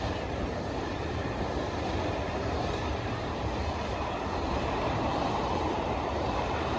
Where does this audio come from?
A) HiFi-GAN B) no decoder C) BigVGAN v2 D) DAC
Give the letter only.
C